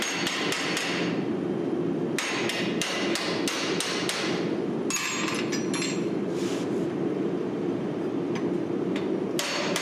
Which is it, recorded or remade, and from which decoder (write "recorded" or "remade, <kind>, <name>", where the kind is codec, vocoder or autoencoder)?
recorded